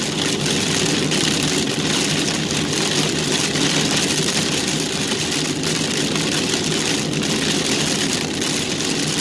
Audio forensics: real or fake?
real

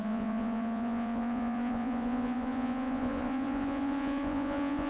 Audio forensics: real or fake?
fake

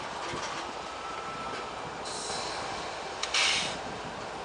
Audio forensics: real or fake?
real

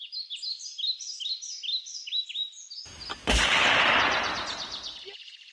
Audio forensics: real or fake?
real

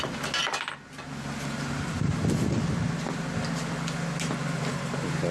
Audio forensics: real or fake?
real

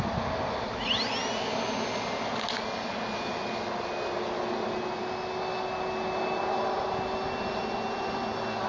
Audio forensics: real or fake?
real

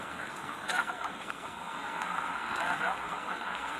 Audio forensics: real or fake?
fake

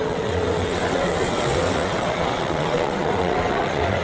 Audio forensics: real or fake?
fake